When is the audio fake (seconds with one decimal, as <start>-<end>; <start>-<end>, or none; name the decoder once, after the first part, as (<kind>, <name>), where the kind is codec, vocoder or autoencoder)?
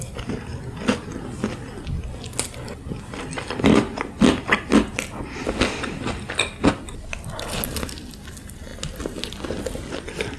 none